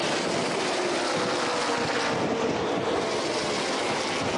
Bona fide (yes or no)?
yes